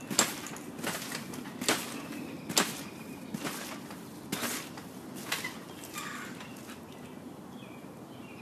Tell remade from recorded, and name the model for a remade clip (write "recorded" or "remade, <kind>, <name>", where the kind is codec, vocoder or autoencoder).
recorded